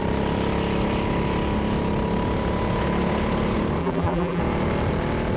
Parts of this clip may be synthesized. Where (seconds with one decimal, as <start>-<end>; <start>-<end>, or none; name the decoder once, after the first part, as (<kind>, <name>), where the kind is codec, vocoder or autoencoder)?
3.8-4.4 (vocoder, BigVGAN v2)